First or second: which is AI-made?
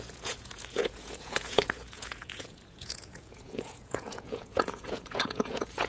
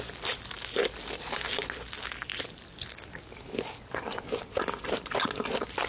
first